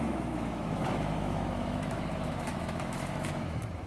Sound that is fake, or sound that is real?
fake